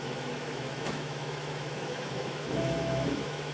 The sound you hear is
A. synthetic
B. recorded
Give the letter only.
A